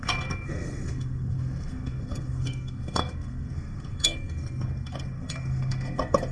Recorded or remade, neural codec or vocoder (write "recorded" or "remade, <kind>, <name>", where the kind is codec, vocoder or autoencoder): remade, codec, SNAC